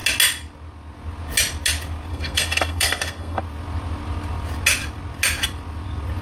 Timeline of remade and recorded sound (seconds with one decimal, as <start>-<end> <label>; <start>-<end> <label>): 0.0-2.1 recorded; 2.1-3.4 remade; 3.4-6.2 recorded